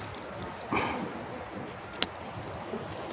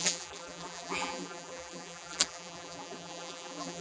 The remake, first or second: second